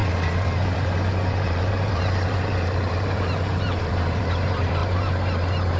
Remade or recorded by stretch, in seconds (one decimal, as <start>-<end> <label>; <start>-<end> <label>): 0.0-5.8 remade